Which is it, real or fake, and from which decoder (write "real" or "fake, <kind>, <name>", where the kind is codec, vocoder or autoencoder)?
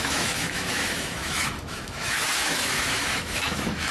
fake, autoencoder, DAC-VAE